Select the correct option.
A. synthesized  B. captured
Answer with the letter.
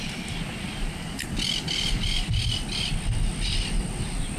B